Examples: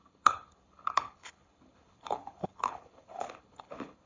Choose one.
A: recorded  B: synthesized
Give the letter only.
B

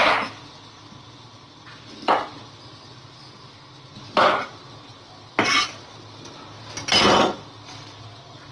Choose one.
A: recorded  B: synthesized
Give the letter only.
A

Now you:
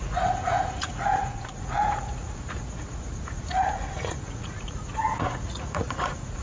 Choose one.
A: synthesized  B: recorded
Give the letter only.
A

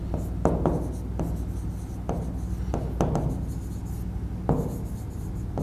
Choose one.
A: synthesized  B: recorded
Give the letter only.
B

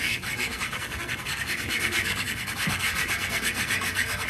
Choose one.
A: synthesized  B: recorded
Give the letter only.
A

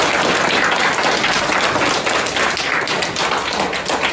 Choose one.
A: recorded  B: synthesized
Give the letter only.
A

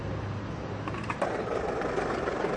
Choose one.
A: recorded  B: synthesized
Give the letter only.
B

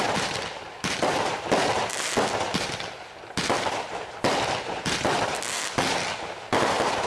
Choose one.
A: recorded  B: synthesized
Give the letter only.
A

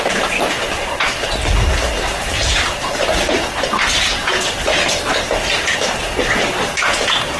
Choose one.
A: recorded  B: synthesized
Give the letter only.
A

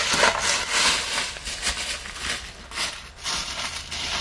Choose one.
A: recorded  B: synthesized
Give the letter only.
A